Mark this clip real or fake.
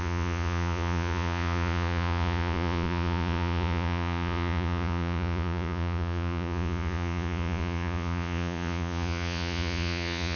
fake